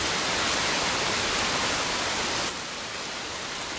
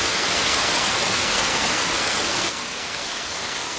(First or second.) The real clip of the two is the first